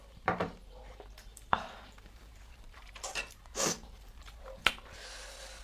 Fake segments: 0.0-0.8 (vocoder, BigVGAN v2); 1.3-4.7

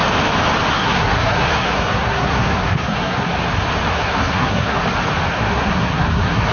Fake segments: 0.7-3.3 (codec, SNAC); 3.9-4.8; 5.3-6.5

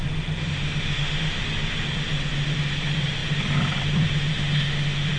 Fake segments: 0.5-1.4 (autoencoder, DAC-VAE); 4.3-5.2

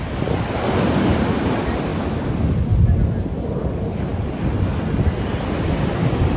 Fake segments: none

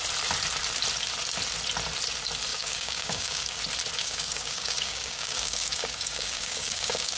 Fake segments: 2.5-3.6 (codec, DAC); 4.0-7.2

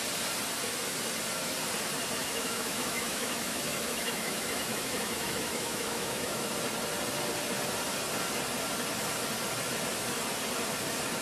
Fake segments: 2.2-6.5 (autoencoder, DAC-VAE)

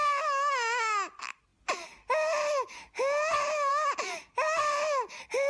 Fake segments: none

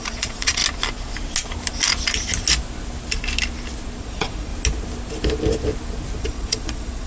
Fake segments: 0.0-0.6 (vocoder, Vocos); 4.0-4.5; 6.2-7.1